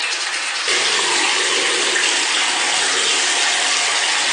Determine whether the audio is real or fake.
real